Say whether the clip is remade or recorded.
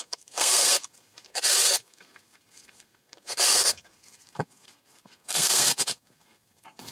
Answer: remade